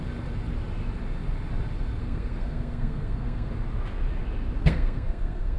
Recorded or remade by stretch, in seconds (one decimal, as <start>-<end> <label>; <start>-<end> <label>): 0.0-2.0 recorded; 2.0-3.5 remade; 3.5-4.6 recorded; 4.6-5.6 remade